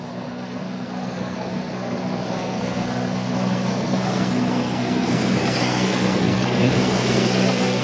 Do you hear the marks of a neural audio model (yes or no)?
yes